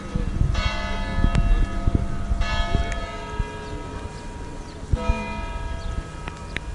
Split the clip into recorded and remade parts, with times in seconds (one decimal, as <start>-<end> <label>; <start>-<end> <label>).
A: 0.0-6.7 recorded